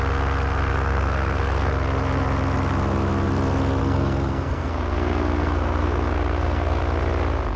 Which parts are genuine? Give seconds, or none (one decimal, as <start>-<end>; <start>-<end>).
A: 0.0-0.7; 1.7-3.8; 6.8-7.6